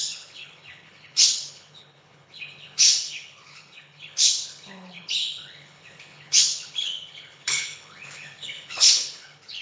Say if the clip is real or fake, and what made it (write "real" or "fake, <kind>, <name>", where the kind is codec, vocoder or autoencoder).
fake, codec, HILCodec